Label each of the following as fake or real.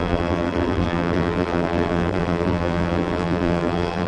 fake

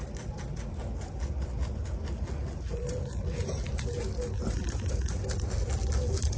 real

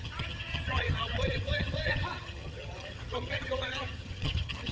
fake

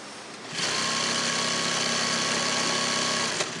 real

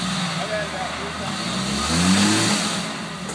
real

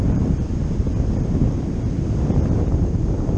fake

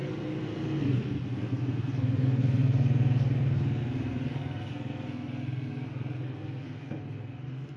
fake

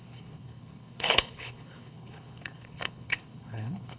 fake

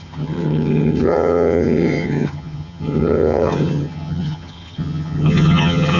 fake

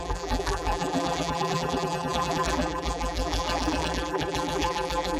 fake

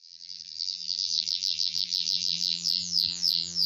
fake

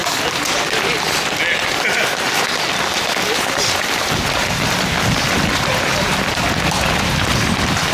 real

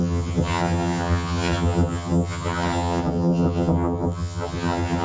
fake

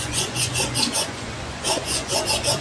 fake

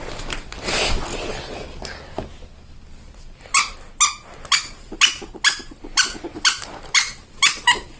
real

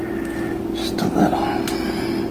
real